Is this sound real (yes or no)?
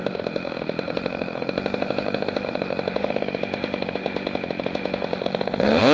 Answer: no